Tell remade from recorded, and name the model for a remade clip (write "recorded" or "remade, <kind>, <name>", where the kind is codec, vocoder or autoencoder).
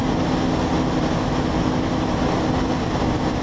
recorded